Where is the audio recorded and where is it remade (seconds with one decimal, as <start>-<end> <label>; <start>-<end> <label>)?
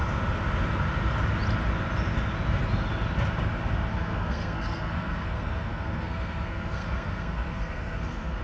0.0-3.9 recorded; 3.9-8.4 remade